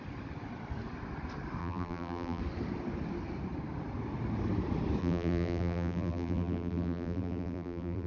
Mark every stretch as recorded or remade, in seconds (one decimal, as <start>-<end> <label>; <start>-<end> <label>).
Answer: 0.0-1.6 recorded; 1.6-2.4 remade; 2.4-5.0 recorded; 5.0-8.1 remade